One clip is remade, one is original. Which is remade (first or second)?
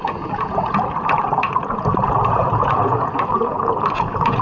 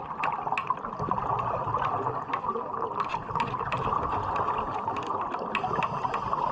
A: first